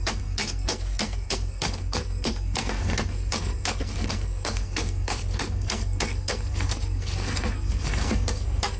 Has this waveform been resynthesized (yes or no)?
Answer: yes